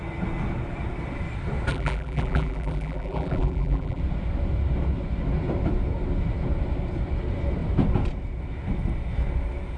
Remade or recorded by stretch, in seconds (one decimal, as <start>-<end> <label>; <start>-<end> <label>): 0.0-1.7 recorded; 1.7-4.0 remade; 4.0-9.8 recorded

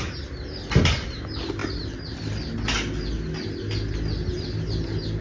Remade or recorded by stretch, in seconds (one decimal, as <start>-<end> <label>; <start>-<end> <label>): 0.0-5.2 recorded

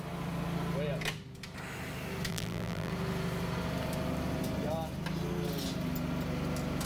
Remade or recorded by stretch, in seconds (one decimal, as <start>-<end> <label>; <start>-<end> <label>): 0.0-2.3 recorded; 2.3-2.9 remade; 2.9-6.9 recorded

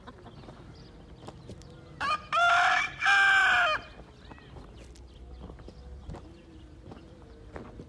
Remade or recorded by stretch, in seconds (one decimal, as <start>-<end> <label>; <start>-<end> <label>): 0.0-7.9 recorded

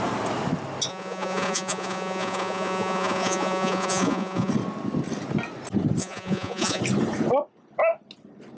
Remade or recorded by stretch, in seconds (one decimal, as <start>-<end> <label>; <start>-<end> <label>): 0.0-0.9 recorded; 0.9-4.5 remade; 4.5-6.0 recorded; 6.0-6.8 remade; 6.8-8.6 recorded